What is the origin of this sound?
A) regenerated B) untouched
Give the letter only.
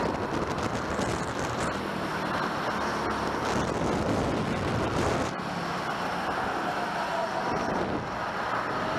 B